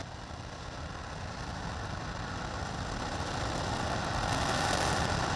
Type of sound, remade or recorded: remade